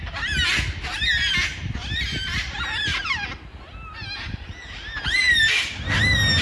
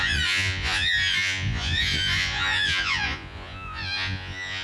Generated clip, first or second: second